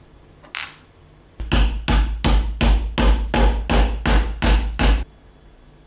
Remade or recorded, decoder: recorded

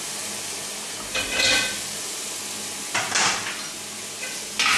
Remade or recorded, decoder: recorded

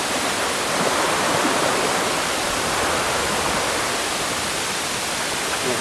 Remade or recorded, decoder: recorded